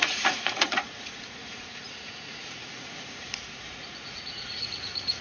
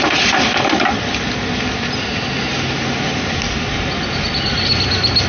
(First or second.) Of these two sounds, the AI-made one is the first